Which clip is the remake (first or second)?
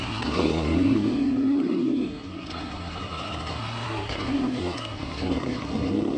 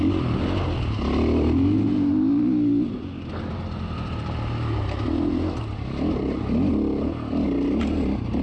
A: first